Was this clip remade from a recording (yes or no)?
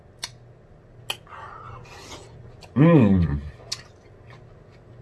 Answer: no